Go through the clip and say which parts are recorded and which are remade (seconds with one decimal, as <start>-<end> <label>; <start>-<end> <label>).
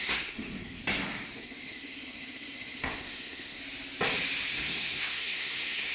0.0-0.8 remade; 0.8-1.4 recorded; 1.4-3.6 remade; 3.6-4.5 recorded; 4.5-5.9 remade